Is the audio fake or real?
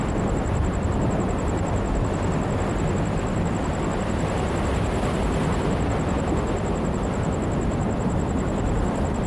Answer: real